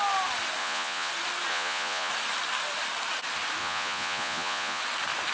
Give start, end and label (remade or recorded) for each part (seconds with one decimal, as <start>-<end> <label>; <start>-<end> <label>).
0.0-0.6 recorded; 0.6-1.1 remade; 1.1-1.5 recorded; 1.5-2.1 remade; 2.1-3.6 recorded; 3.6-4.8 remade; 4.8-5.3 recorded